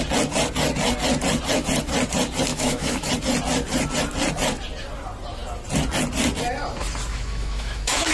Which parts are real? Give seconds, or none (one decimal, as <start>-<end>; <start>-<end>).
0.0-2.5; 3.1-7.1